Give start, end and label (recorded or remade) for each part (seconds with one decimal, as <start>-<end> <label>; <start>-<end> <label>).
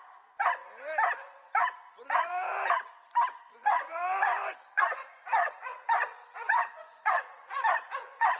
0.0-0.6 remade; 0.6-2.0 recorded; 2.0-2.4 remade; 2.4-3.3 recorded; 3.3-8.4 remade